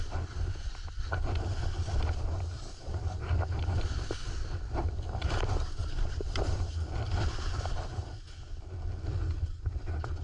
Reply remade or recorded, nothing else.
recorded